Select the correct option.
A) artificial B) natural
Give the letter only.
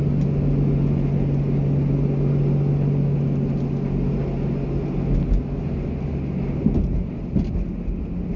B